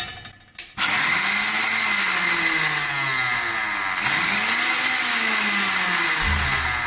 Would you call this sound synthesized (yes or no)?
no